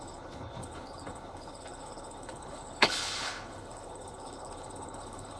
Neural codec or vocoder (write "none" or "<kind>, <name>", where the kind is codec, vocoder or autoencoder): codec, HILCodec